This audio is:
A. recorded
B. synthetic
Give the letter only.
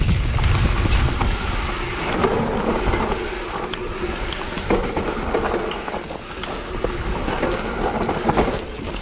A